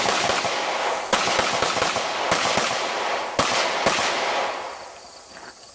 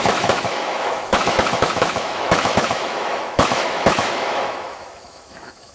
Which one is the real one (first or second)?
first